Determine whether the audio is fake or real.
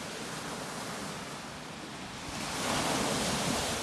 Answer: real